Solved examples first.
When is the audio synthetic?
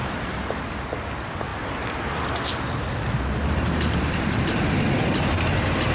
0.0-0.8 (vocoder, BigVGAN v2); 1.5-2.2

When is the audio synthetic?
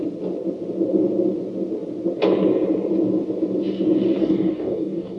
4.2-5.2 (codec, DAC)